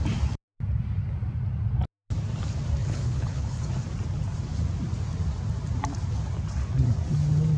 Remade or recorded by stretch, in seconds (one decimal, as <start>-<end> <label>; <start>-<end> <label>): 0.0-2.8 recorded; 2.8-3.6 remade; 3.6-7.6 recorded